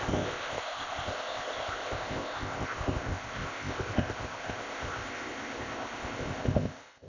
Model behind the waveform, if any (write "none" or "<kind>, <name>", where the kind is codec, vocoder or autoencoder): codec, ZipCodec